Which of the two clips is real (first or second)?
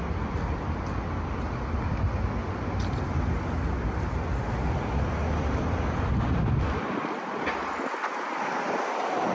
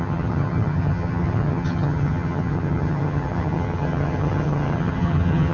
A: first